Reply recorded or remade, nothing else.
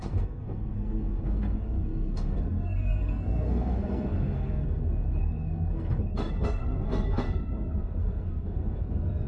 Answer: remade